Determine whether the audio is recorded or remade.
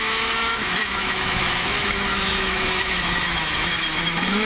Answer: remade